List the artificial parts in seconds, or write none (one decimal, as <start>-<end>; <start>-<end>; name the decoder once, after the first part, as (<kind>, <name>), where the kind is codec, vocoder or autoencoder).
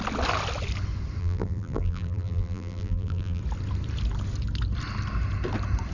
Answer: 1.2-3.4 (vocoder, BigVGAN v2)